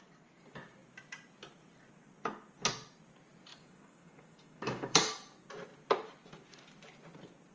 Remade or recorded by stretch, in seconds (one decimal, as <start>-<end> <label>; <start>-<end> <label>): 0.0-3.5 recorded; 3.5-5.0 remade; 5.0-7.5 recorded